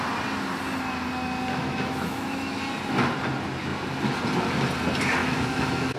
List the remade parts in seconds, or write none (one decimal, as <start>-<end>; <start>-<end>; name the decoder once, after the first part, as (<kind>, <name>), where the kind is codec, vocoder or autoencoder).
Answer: 1.5-2.6 (autoencoder, DAC-VAE); 5.2-6.0